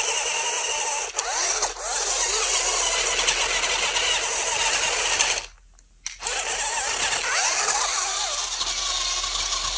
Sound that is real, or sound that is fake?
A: real